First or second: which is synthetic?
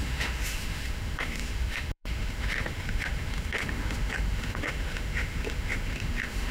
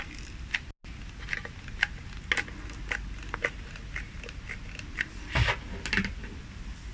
first